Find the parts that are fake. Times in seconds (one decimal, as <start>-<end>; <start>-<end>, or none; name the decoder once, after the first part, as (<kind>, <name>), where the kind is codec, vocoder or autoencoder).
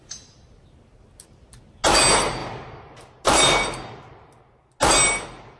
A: none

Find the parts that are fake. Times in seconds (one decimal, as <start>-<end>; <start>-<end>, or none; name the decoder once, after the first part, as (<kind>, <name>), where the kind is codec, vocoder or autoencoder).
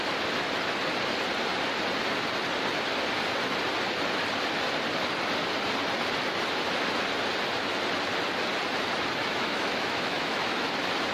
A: 9.2-10.7 (autoencoder, DAC-VAE)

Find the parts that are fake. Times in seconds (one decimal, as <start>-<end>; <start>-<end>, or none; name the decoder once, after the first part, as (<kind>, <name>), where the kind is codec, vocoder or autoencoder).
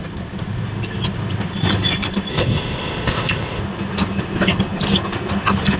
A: 2.3-3.6 (codec, ZipCodec)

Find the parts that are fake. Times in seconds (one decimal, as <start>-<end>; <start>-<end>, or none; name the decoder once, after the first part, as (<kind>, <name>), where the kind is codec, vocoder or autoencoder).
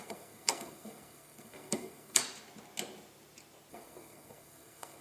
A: 0.0-2.2 (codec, SNAC); 3.7-5.0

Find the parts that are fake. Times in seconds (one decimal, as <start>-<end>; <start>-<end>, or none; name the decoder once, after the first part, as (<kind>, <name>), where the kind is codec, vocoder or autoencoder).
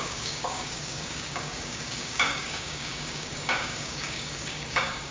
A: 0.0-5.1 (codec, DAC)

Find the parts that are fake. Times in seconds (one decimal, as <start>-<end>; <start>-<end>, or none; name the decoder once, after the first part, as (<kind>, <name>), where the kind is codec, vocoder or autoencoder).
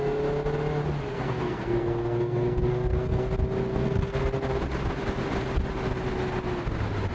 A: 1.1-3.3 (codec, SNAC); 3.7-4.2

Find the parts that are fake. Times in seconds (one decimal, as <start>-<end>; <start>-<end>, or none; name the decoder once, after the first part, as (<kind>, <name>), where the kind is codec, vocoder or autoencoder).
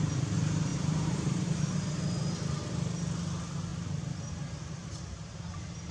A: 0.7-1.6 (vocoder, BigVGAN v2); 4.8-5.9